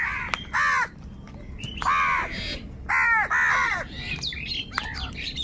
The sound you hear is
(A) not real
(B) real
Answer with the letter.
B